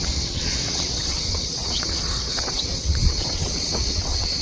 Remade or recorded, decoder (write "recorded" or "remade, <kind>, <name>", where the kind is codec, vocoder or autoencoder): remade, vocoder, WaveNeXt